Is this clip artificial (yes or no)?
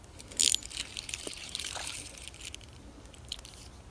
yes